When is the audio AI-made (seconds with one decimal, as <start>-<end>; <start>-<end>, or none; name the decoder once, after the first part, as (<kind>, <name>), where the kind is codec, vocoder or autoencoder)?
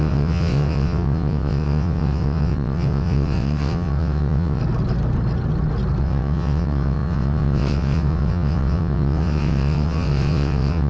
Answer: 0.0-4.6 (vocoder, WaveNeXt); 6.0-10.9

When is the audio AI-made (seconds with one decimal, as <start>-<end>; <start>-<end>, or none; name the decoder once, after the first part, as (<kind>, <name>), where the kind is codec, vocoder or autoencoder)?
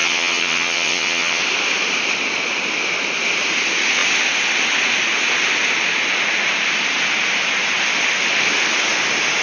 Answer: 0.0-1.4 (vocoder, HiFi-GAN)